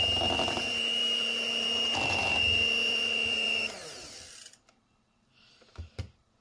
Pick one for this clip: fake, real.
fake